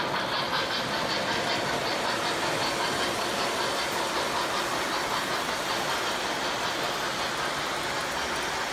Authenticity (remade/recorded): recorded